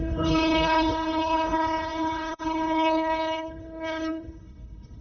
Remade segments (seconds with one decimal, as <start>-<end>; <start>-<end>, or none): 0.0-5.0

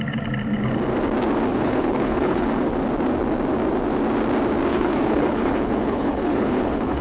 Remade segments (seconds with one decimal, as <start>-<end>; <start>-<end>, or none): 1.5-2.7; 4.7-7.0

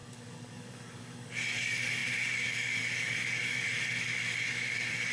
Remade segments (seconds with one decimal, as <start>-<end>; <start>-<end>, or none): 0.0-5.1

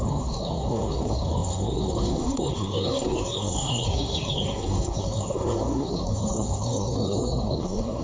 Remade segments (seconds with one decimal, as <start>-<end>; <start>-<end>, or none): 0.0-8.0

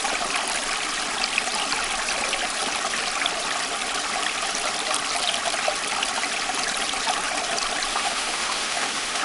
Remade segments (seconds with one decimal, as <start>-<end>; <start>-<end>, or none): 7.9-9.2

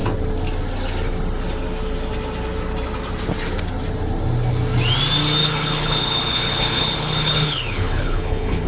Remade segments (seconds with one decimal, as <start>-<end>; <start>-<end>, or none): 5.4-8.7